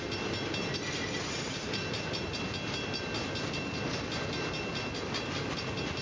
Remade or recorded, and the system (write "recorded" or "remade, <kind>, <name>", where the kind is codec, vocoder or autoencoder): recorded